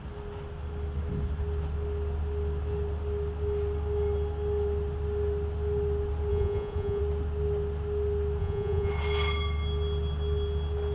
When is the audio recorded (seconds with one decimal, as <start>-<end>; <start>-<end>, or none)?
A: 0.0-6.3; 7.0-8.4; 8.9-10.9